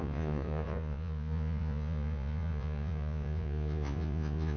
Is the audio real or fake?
fake